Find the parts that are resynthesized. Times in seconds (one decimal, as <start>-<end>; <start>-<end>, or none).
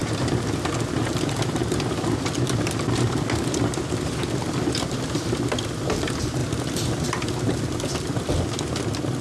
none